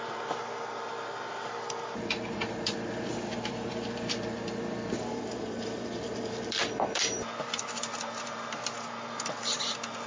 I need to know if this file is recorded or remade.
remade